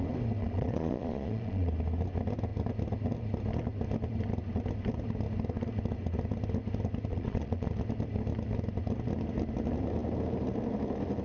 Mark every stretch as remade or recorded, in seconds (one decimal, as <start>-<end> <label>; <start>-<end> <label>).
0.0-0.4 recorded; 0.4-1.7 remade; 1.7-7.1 recorded; 7.1-7.7 remade; 7.7-11.2 recorded